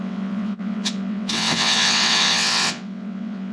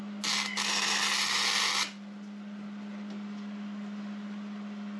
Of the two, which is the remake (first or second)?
first